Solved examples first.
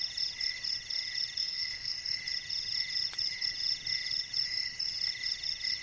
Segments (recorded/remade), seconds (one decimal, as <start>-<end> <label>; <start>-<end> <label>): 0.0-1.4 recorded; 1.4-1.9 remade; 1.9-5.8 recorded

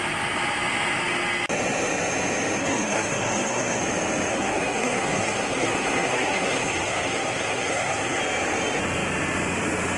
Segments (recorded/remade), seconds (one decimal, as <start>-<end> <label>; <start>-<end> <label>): 0.0-2.6 recorded; 2.6-3.8 remade; 3.8-4.3 recorded; 4.3-8.2 remade; 8.2-10.0 recorded

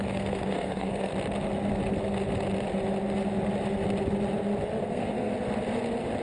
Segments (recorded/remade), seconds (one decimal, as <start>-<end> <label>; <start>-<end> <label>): 0.0-1.1 remade; 1.1-4.8 recorded; 4.8-5.3 remade; 5.3-6.2 recorded

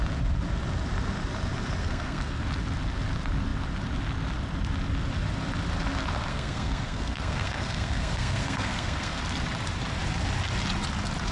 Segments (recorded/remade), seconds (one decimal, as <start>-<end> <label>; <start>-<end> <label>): 0.0-1.8 recorded; 1.8-2.4 remade; 2.4-6.3 recorded; 6.3-9.2 remade; 9.2-11.3 recorded

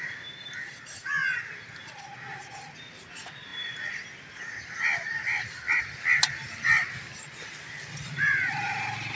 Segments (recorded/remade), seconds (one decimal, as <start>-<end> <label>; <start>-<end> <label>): 0.0-9.2 recorded